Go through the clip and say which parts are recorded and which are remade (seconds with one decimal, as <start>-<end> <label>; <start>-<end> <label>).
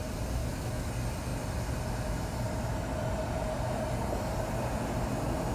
0.0-0.4 recorded; 0.4-0.9 remade; 0.9-5.5 recorded